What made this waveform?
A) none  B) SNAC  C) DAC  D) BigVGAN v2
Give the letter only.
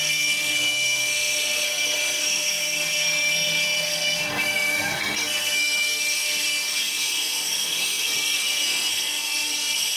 B